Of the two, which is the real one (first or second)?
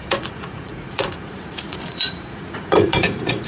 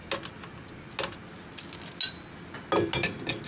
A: second